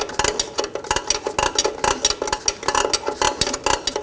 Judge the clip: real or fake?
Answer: real